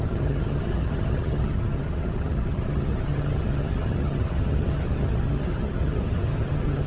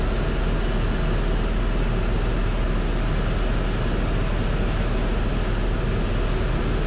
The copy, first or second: first